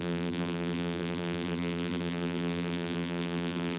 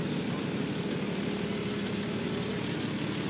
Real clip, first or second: second